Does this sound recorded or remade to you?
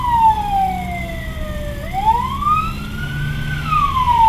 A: recorded